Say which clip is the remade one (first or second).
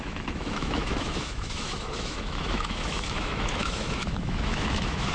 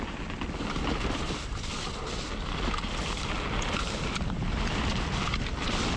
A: first